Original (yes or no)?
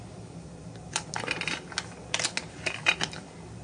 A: yes